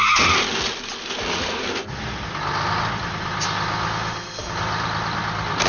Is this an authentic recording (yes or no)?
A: yes